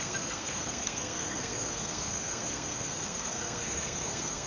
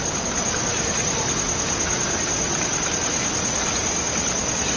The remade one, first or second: first